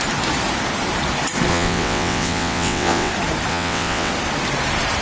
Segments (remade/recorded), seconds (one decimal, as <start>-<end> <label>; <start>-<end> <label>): 0.0-1.5 recorded; 1.5-3.1 remade; 3.1-3.5 recorded; 3.5-4.1 remade; 4.1-5.0 recorded